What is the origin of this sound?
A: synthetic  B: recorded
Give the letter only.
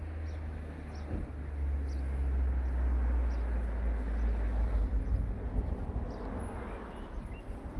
B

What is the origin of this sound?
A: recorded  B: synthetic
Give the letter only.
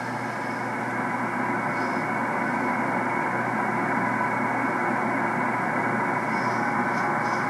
A